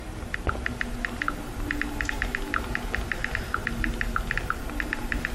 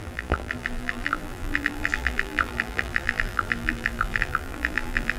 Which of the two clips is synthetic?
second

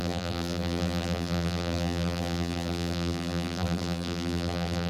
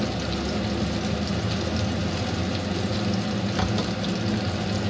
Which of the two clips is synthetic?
first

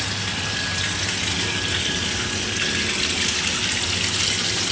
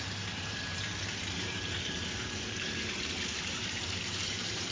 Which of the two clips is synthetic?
second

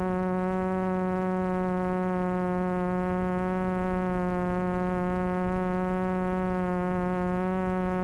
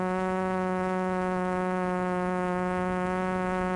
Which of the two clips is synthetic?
second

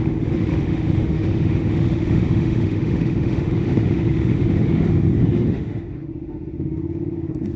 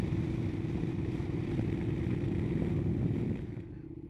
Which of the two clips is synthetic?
first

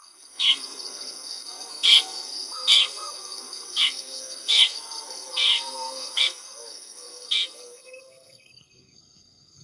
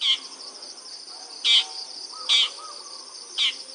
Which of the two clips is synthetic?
first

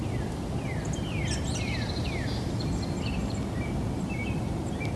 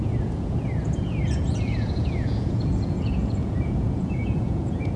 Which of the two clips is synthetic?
second